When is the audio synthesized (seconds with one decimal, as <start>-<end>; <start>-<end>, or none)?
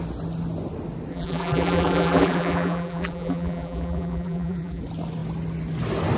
1.1-4.8